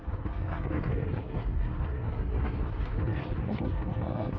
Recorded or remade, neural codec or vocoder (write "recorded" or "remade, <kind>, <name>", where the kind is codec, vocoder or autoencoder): remade, codec, SNAC